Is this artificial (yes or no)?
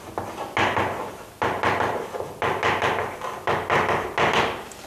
no